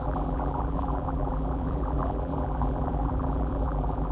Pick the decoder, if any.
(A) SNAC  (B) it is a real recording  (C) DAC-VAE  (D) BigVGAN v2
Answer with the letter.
D